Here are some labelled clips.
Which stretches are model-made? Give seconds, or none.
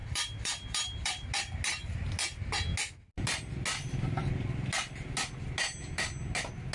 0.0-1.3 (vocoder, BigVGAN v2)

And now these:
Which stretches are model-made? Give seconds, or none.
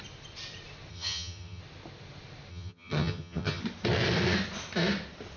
0.9-1.6 (vocoder, HiFi-GAN); 2.5-3.6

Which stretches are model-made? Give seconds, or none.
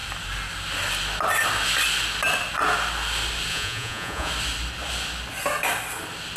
3.5-4.3 (vocoder, Vocos)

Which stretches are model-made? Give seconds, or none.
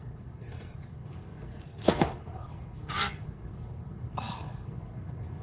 0.0-5.4 (codec, SNAC)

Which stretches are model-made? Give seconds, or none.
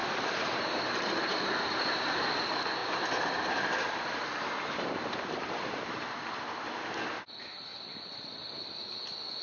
0.0-1.4 (vocoder, BigVGAN v2); 2.8-7.3; 7.7-8.8